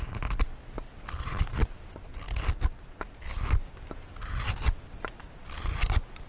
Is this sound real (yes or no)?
yes